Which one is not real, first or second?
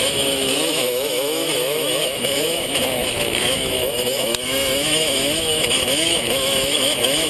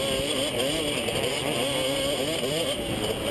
first